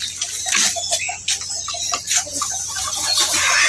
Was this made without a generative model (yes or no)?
yes